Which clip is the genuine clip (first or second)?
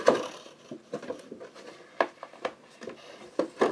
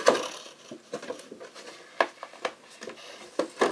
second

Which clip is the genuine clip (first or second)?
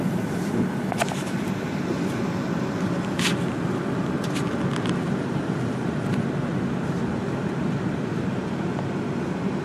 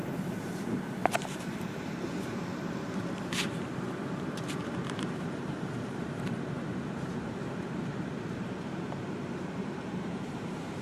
first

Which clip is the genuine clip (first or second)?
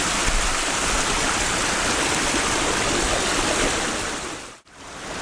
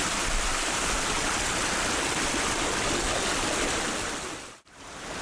first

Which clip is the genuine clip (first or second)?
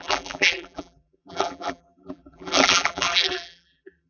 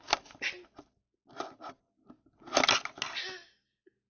second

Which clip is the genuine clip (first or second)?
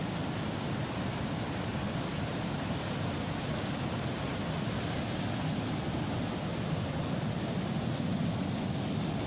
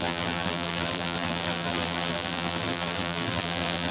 first